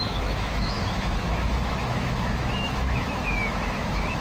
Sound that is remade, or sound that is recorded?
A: remade